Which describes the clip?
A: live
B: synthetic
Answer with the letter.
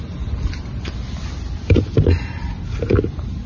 A